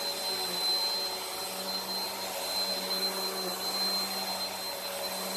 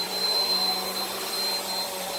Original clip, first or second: first